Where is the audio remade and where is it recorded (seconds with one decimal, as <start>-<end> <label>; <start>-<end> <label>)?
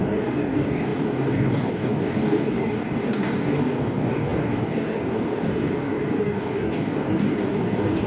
0.0-8.1 remade